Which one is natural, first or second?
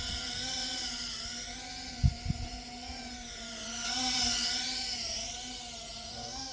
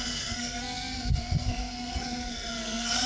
first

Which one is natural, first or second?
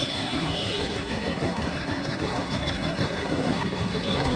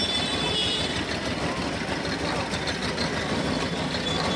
second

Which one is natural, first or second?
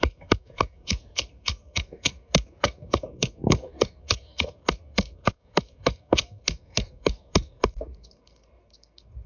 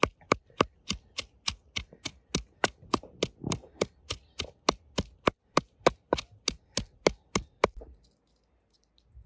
second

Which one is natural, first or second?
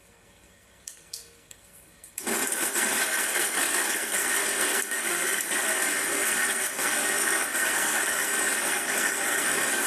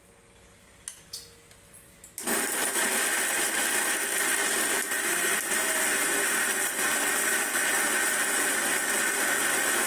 second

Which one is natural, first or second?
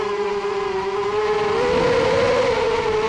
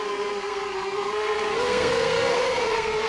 first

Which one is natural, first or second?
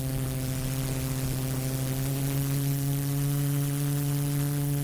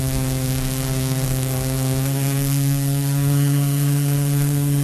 first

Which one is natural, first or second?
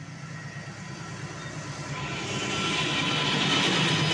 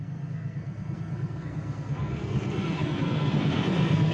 first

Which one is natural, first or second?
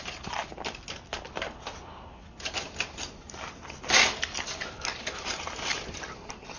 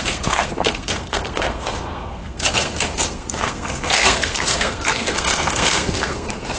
first